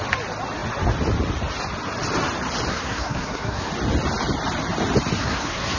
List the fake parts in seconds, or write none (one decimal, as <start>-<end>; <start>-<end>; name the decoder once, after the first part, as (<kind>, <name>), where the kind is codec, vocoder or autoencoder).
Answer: 2.7-3.7 (codec, SNAC); 5.2-5.8